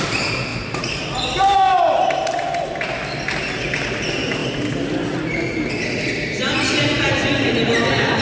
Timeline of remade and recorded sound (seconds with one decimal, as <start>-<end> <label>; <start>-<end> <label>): 0.0-0.5 recorded; 0.5-1.0 remade; 1.0-8.2 recorded